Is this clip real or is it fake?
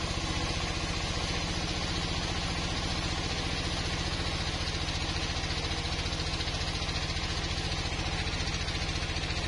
real